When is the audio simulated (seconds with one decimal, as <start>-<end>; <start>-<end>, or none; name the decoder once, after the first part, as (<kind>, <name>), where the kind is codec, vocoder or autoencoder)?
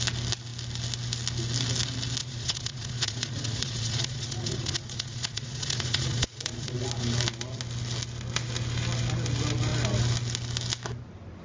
2.2-6.8 (vocoder, Vocos)